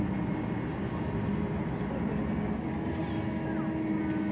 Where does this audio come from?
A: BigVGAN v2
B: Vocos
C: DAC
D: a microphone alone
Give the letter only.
D